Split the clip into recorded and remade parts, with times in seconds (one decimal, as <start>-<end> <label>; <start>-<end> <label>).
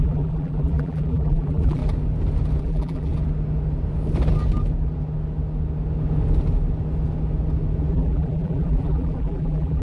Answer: 0.0-1.8 remade; 1.8-2.6 recorded; 2.6-3.1 remade; 3.1-7.9 recorded; 7.9-9.8 remade